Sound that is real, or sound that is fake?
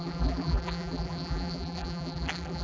fake